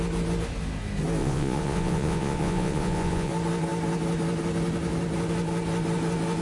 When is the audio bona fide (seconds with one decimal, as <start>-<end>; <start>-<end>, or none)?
0.0-1.2; 3.3-6.4